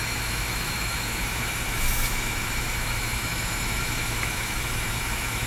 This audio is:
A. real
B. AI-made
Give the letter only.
B